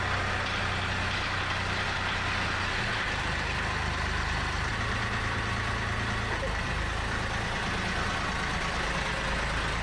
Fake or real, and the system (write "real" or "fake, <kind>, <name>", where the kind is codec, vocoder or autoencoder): real